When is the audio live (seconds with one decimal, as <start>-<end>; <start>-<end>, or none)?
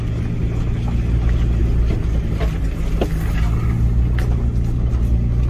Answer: 0.0-5.5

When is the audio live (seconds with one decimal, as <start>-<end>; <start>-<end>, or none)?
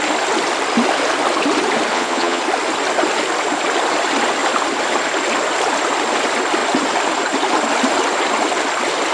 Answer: 0.0-1.9; 2.4-9.1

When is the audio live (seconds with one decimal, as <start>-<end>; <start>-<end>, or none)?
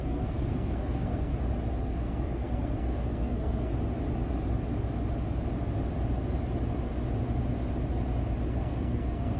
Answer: 1.3-1.8; 3.7-8.5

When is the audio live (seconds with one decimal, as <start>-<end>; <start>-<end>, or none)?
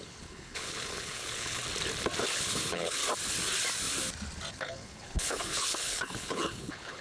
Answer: 1.6-2.2; 3.0-4.5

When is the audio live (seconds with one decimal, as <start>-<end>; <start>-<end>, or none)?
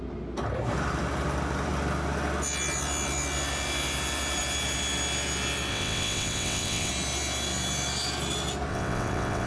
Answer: 0.0-5.7; 6.9-8.7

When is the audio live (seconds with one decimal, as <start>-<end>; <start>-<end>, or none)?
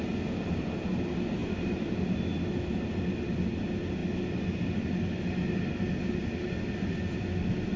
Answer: 0.0-7.8